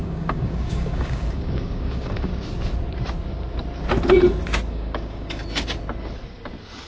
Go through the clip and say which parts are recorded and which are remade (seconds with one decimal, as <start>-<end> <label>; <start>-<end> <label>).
0.0-2.3 remade; 2.3-4.7 recorded; 4.7-5.8 remade; 5.8-6.9 recorded